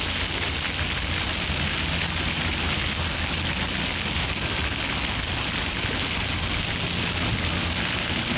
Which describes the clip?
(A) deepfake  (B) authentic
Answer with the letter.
B